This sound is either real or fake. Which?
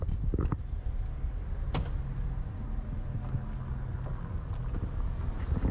real